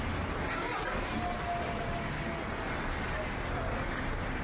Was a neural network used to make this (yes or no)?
no